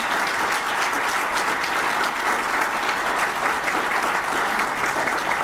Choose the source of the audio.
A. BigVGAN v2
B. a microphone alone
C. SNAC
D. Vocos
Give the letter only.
B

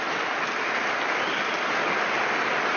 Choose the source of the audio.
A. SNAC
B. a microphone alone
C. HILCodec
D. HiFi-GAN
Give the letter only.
B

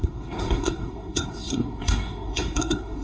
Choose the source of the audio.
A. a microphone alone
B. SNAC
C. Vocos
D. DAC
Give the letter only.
B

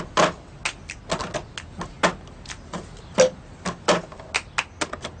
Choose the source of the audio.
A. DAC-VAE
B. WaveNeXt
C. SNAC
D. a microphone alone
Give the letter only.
D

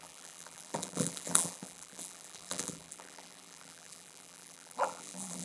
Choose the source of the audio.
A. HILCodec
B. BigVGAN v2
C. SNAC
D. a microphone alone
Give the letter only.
B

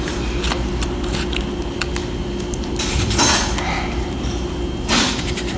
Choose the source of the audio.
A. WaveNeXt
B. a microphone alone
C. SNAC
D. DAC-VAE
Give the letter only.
B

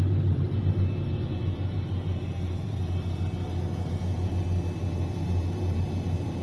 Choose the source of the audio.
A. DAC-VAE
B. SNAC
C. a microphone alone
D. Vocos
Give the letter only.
C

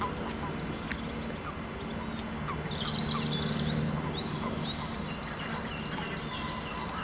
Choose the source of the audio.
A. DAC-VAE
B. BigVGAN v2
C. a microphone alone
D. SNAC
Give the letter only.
C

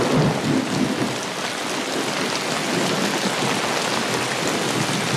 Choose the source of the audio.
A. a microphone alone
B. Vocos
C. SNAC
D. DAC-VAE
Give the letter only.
A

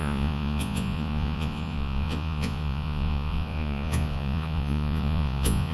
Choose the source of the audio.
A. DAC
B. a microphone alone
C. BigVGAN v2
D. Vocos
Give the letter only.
D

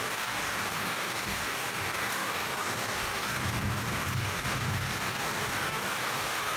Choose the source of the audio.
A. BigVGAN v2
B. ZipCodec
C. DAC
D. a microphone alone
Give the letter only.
C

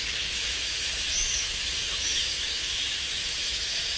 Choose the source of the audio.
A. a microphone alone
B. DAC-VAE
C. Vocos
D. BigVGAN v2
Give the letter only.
B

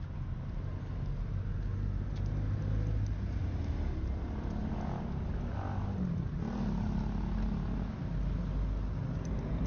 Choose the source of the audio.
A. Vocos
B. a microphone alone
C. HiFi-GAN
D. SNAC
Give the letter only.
B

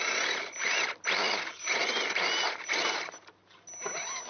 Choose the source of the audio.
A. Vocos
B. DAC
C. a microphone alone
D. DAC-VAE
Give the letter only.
C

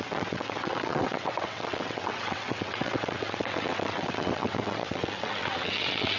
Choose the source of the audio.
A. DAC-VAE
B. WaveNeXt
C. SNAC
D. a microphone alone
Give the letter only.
B